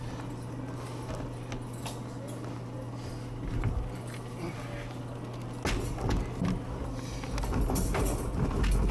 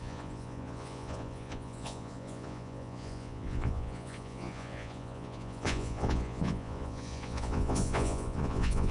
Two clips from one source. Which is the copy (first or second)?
second